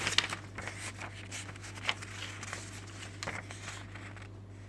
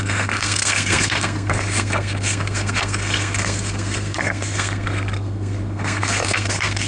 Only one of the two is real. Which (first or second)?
first